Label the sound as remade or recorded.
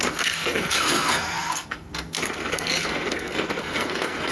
remade